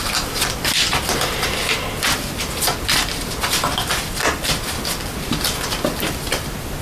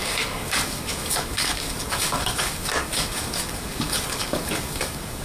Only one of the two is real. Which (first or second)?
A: first